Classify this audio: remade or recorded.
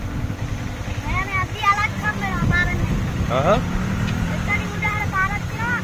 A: recorded